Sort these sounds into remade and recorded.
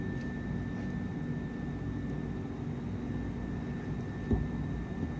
recorded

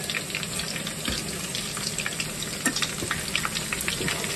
recorded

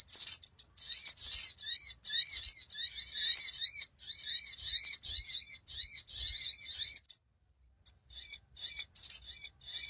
recorded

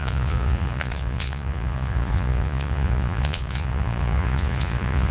remade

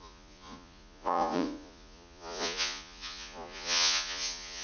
remade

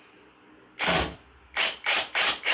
recorded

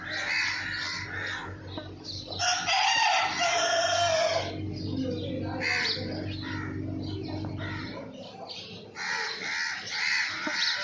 recorded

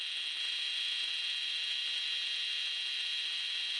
recorded